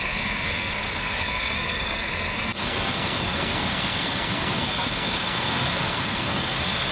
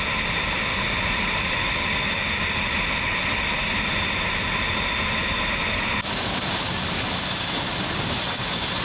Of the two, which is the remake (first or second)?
first